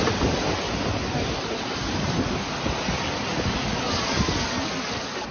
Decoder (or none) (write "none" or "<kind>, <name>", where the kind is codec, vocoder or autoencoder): none